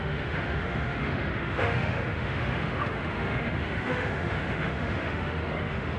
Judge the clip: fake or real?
fake